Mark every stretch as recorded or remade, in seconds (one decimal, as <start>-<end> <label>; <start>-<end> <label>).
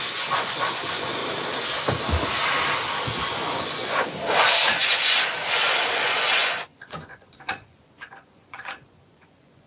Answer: 0.0-1.2 remade; 1.2-3.2 recorded; 3.2-9.7 remade